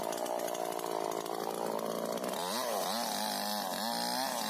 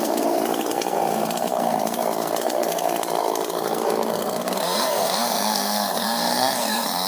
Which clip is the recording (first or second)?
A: first